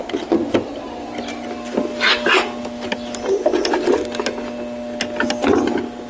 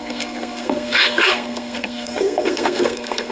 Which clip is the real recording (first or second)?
first